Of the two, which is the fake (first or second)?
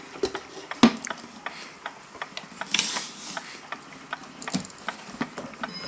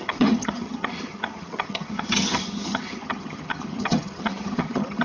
second